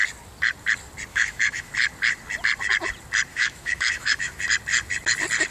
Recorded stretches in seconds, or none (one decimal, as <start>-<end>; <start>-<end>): 0.0-1.1; 1.7-3.3; 4.4-5.5